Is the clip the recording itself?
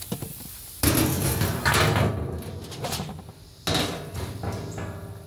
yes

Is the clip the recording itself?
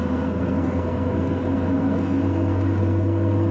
no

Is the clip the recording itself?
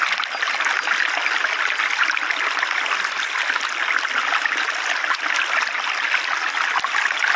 yes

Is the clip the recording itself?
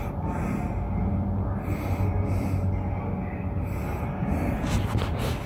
yes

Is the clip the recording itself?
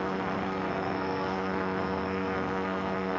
no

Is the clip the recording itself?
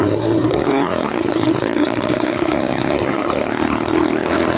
no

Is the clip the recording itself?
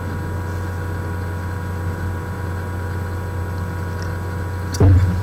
yes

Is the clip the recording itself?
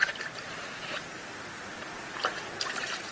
yes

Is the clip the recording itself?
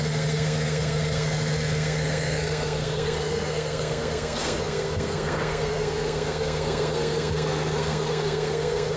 no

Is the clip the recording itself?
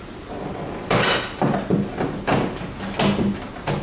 yes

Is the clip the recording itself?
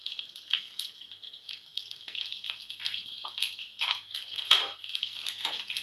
no